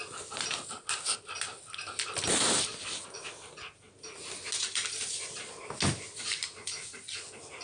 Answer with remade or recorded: recorded